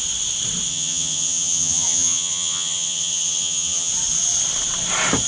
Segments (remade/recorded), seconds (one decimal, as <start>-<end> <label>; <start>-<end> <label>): 0.0-0.7 recorded; 0.7-3.9 remade; 3.9-5.3 recorded